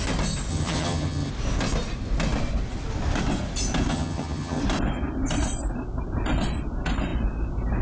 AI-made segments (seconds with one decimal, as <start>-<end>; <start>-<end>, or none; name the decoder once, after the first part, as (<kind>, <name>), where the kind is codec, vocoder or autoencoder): 0.5-1.3 (vocoder, HiFi-GAN); 3.9-4.6